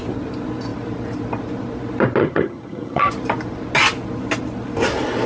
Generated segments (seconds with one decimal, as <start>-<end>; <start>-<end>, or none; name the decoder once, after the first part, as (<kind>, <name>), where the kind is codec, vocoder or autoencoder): 2.2-3.1 (vocoder, HiFi-GAN)